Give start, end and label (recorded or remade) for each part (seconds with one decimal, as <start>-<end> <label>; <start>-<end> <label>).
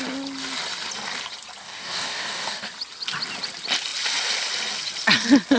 0.0-1.6 recorded; 1.6-2.7 remade; 2.7-5.6 recorded